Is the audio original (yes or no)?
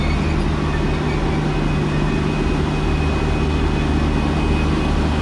yes